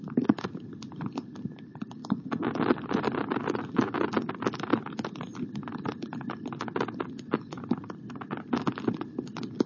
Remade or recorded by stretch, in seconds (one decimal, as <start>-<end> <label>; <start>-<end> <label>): 0.0-5.9 remade; 5.9-7.3 recorded; 7.3-9.7 remade